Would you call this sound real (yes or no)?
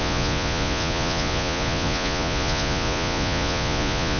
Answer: no